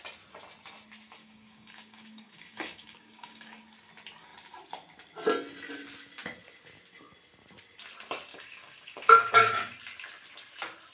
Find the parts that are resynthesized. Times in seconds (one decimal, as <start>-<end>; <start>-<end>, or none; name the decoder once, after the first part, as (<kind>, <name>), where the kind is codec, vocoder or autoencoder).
1.2-3.6 (codec, DAC); 8.3-9.3